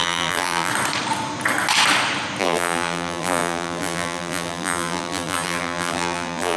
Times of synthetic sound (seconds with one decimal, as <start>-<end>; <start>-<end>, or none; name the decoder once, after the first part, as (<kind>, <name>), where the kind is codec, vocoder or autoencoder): 0.0-0.7 (vocoder, BigVGAN v2); 2.4-6.6